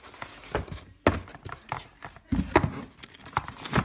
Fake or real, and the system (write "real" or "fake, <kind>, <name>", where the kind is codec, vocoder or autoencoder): real